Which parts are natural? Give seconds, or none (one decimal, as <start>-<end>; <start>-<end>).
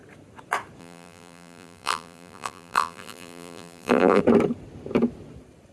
0.0-0.8; 4.2-5.7